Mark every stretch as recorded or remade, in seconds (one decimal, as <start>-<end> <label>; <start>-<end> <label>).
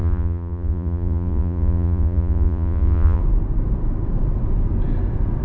0.0-3.2 remade; 3.2-5.4 recorded